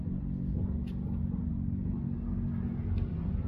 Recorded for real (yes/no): yes